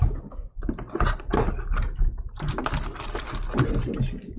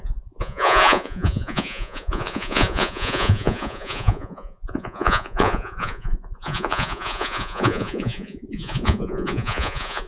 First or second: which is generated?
second